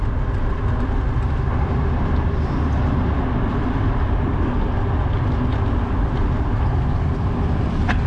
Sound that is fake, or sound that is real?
real